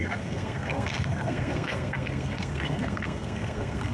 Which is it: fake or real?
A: fake